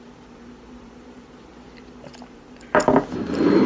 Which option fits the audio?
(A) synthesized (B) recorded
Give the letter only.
A